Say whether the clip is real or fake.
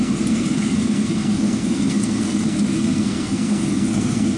fake